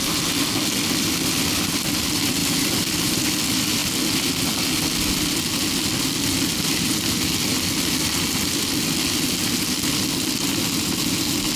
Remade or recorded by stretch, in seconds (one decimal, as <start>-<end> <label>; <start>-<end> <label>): 0.0-2.4 recorded; 2.4-3.3 remade; 3.3-11.6 recorded

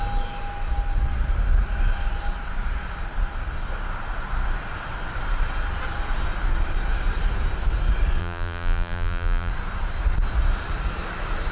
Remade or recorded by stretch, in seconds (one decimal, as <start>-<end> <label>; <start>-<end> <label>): 0.0-8.2 recorded; 8.2-9.5 remade; 9.5-11.5 recorded

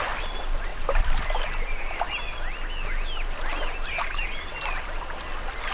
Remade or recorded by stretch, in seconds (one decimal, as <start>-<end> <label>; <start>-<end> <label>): 0.0-5.7 recorded

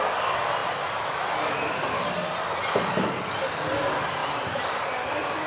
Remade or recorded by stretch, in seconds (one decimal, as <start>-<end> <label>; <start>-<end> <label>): 0.0-4.2 recorded; 4.2-4.8 remade; 4.8-5.5 recorded

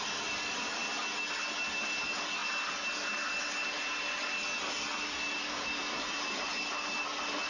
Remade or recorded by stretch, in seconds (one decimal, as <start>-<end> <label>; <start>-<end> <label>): 0.0-0.8 remade; 0.8-1.3 recorded; 1.3-2.4 remade; 2.4-4.8 recorded; 4.8-7.5 remade

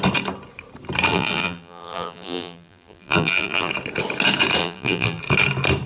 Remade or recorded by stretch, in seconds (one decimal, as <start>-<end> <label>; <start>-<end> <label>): 0.0-1.1 recorded; 1.1-3.7 remade; 3.7-4.6 recorded; 4.6-5.2 remade; 5.2-5.9 recorded

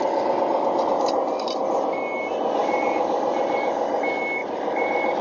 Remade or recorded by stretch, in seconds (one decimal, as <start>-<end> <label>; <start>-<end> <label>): 0.0-2.6 recorded; 2.6-3.9 remade; 3.9-4.4 recorded; 4.4-5.2 remade

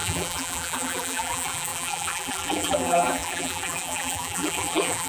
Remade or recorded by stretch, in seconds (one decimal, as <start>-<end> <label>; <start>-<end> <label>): 0.0-5.1 remade